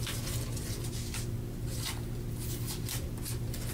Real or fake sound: real